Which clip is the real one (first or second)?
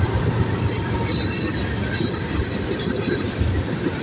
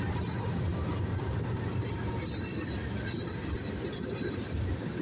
second